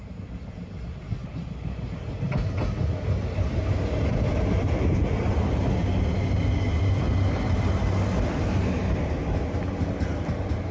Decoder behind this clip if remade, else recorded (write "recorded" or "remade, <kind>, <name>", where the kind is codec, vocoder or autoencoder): recorded